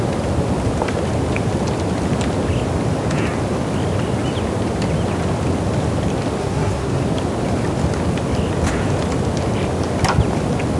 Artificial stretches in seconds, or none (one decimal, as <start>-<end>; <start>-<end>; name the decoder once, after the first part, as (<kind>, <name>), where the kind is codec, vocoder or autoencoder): 6.4-7.0 (codec, SNAC)